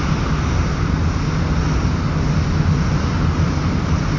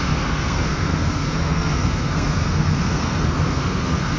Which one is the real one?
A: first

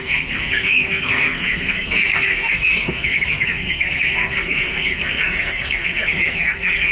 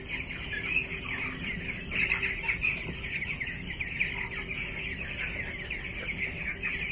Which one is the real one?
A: second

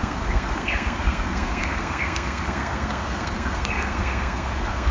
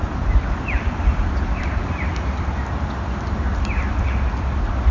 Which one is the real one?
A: second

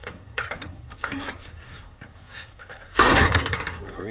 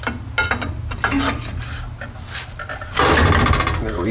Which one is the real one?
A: second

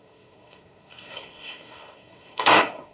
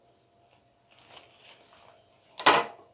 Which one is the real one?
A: second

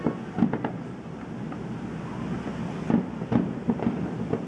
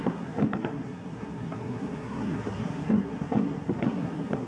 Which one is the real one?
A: first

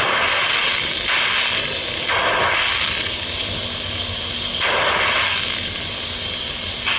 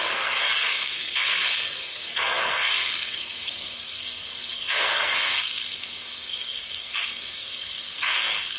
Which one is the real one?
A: first